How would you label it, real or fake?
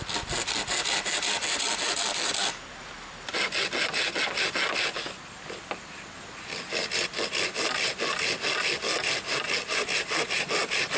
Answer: real